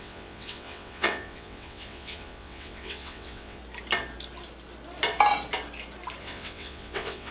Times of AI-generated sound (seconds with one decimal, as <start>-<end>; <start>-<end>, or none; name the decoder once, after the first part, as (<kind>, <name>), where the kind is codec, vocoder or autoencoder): 0.0-3.6 (vocoder, WaveNeXt); 6.2-7.3